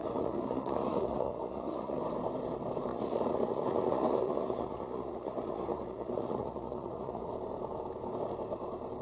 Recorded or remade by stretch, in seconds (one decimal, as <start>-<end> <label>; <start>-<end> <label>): 0.0-2.0 remade; 2.0-2.9 recorded; 2.9-7.3 remade; 7.3-9.0 recorded